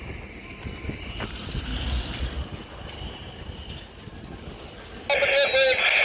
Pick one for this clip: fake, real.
real